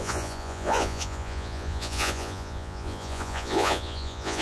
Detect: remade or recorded remade